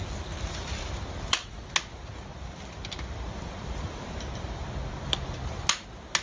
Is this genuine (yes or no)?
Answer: yes